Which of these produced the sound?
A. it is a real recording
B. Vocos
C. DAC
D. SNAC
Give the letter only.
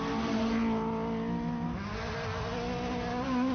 A